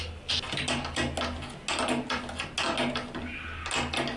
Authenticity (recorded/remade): recorded